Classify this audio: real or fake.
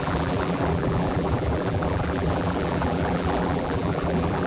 fake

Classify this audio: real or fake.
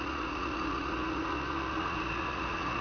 fake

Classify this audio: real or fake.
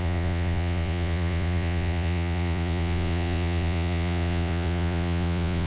fake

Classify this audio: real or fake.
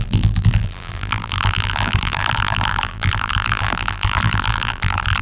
fake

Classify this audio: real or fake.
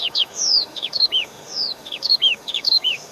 fake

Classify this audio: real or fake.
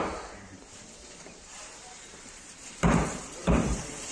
fake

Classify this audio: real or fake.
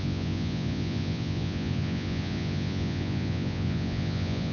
fake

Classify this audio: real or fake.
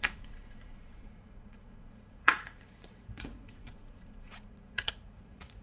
fake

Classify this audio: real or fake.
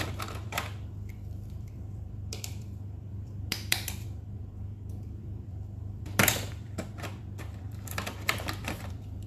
fake